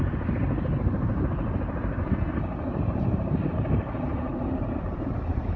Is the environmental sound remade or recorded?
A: remade